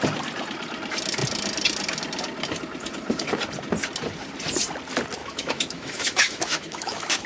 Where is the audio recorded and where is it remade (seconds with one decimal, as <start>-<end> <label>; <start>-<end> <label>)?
0.0-5.2 recorded; 5.2-7.3 remade